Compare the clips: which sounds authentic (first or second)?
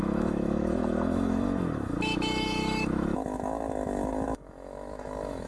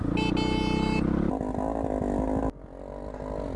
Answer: second